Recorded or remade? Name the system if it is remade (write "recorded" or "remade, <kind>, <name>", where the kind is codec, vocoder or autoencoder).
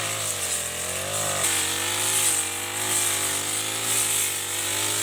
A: recorded